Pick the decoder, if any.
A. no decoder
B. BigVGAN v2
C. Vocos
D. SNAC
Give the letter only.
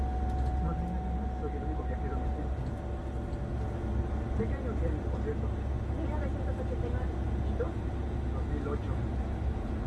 A